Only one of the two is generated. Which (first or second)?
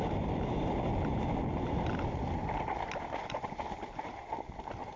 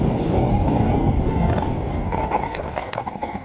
second